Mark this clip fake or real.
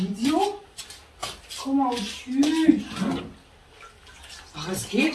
real